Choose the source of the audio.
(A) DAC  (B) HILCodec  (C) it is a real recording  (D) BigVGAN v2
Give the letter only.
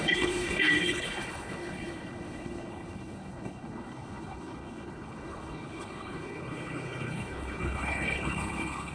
B